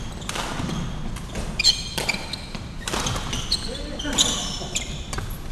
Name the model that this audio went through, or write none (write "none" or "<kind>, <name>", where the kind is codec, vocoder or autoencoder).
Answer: none